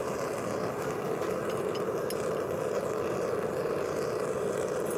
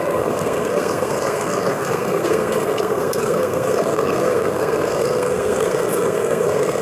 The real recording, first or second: first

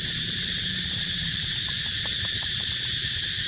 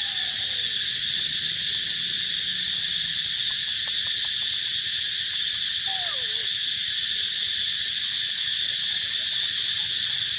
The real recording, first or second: second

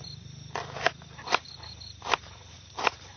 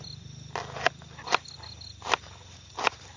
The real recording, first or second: second